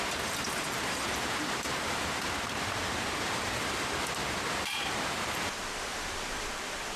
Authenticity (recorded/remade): remade